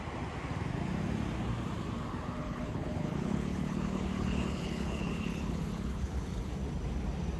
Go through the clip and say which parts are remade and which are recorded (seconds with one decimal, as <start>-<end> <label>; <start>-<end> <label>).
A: 0.0-2.4 recorded; 2.4-6.5 remade; 6.5-7.4 recorded